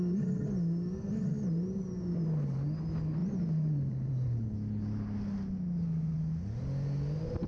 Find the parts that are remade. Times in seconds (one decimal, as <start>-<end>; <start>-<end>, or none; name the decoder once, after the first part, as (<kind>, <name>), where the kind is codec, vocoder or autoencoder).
none